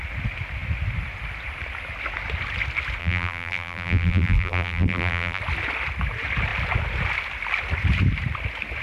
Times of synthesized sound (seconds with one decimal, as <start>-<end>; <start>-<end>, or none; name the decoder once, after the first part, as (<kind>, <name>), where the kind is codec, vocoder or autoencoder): 3.0-5.4 (vocoder, BigVGAN v2)